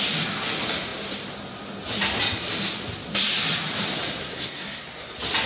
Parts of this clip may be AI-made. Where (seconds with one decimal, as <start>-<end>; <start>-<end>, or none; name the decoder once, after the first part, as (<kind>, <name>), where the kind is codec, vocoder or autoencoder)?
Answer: 4.2-4.8 (codec, SNAC)